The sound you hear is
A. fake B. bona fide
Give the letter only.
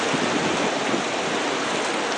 B